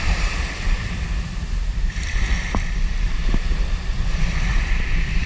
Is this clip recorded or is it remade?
remade